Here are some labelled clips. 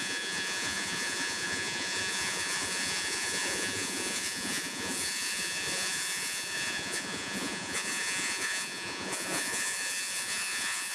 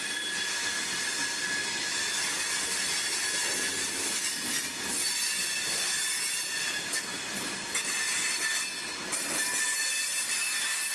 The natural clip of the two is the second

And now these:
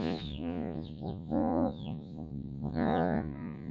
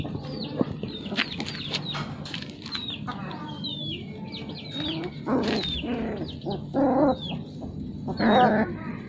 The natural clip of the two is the second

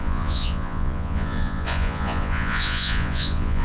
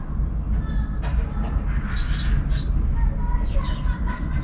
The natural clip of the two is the second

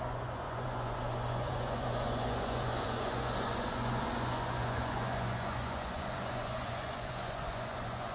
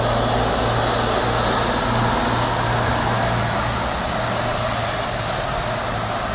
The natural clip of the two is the second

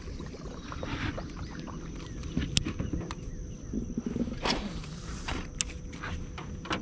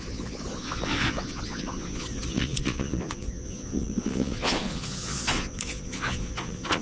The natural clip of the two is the first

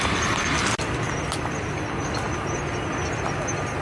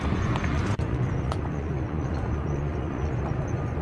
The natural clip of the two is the first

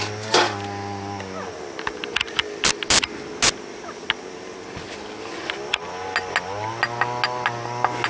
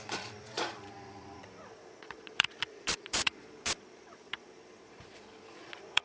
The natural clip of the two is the first